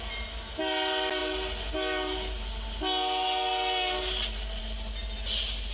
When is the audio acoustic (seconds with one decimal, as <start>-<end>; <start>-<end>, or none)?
0.0-5.7